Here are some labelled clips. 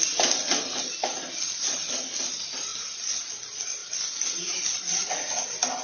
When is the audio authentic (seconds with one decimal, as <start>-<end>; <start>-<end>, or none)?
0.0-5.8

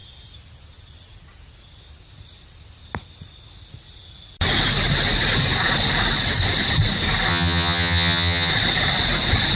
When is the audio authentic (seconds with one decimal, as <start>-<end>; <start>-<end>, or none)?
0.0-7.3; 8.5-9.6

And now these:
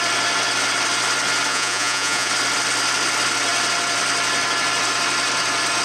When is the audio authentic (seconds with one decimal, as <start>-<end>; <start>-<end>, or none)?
0.0-1.5; 2.3-5.8

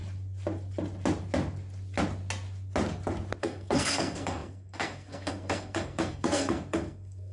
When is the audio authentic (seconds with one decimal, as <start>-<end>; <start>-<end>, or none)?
0.0-3.4

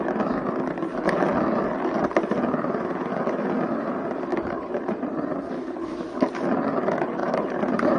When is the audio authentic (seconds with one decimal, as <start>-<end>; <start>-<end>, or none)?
0.0-4.3; 5.3-7.2

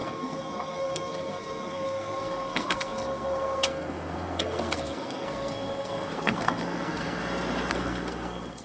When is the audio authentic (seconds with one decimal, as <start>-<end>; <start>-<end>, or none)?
7.2-7.7

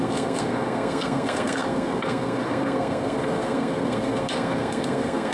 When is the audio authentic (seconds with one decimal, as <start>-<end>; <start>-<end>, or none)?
none